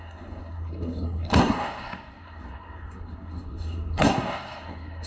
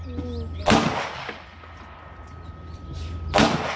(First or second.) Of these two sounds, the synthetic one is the first